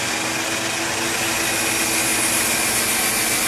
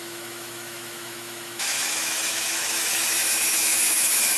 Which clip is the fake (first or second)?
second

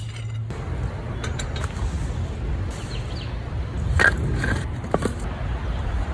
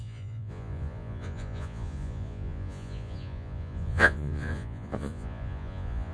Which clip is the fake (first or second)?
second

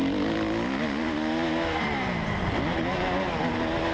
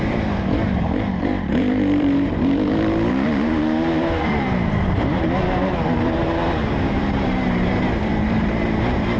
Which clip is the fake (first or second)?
second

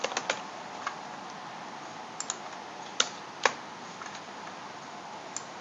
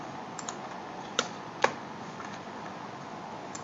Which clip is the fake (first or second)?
second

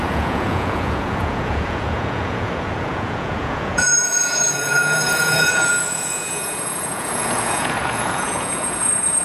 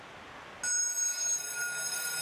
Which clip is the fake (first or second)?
first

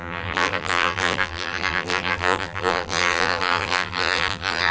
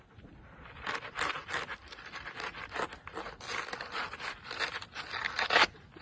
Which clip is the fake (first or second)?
first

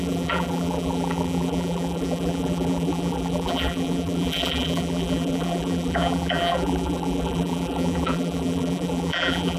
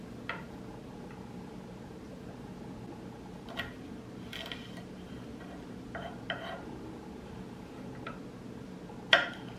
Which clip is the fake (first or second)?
first